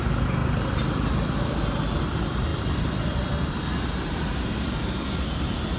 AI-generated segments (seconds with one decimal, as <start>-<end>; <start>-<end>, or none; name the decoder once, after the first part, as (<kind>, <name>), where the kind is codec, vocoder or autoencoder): none